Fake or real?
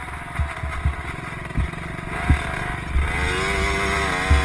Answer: real